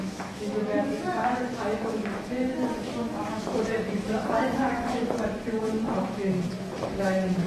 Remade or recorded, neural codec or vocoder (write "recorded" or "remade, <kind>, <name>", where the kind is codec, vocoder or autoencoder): remade, autoencoder, DAC-VAE